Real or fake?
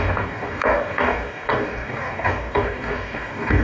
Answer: fake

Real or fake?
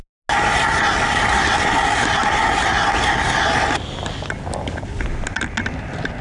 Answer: real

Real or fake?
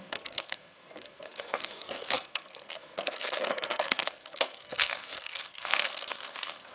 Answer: fake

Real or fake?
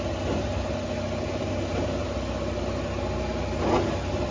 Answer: real